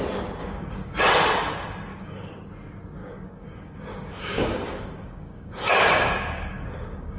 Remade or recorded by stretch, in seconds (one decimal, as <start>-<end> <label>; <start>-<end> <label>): 0.0-0.4 recorded; 0.4-1.0 remade; 1.0-1.9 recorded; 1.9-2.4 remade; 2.4-3.0 recorded; 3.0-7.2 remade